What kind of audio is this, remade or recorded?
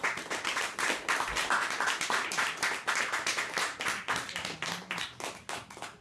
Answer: recorded